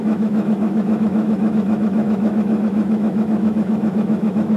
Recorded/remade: remade